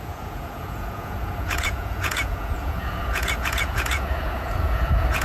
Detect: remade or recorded remade